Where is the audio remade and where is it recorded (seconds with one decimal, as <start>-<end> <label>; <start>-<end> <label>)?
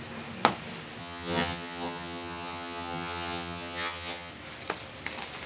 0.0-1.0 recorded; 1.0-4.3 remade; 4.3-5.5 recorded